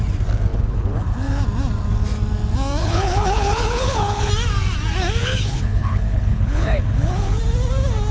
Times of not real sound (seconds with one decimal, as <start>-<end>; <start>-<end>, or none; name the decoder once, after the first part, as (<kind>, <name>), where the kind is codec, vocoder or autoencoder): 0.5-1.4 (codec, HILCodec); 2.8-4.3; 5.2-7.4